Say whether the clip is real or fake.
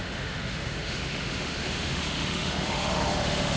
fake